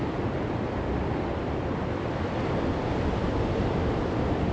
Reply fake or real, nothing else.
real